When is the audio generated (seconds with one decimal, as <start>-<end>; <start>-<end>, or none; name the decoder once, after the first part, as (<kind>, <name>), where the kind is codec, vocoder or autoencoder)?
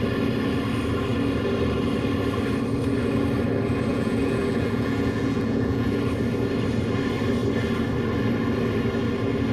3.9-6.0 (vocoder, Vocos)